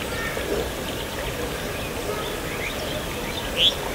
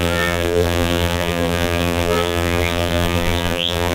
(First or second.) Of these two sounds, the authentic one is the first